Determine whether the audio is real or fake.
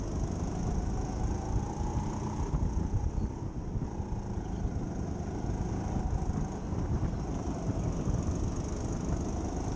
real